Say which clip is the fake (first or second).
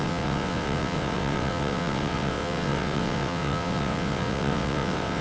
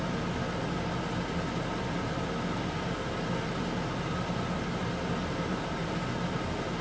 first